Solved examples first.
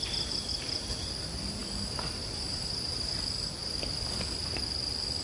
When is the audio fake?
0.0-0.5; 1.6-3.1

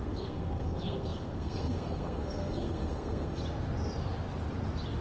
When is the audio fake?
0.0-3.4

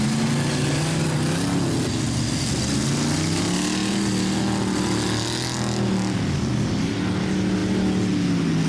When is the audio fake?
none

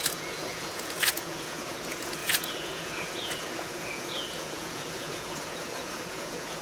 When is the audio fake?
0.0-6.6